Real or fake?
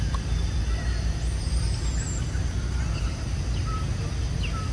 real